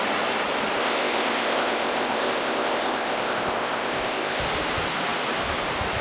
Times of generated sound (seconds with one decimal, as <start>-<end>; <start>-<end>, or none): 0.8-4.4

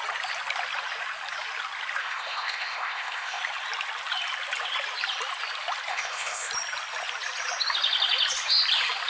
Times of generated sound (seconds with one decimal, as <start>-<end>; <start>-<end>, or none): 2.0-3.4; 5.9-6.5

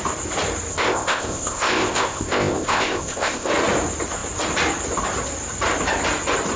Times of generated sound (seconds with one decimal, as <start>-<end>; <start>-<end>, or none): 0.7-3.5

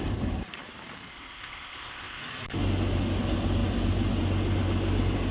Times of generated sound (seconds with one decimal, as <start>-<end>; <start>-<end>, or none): 1.1-2.2